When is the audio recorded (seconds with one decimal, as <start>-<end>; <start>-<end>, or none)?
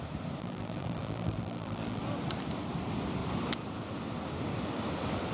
0.0-0.4; 2.0-5.3